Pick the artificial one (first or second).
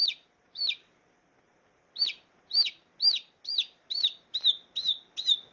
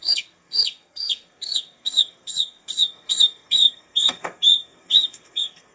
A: second